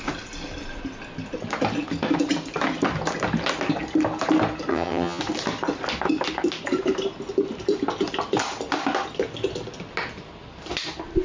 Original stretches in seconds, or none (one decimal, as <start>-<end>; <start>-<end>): 0.0-4.7; 5.2-11.2